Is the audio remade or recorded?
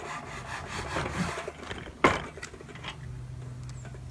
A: recorded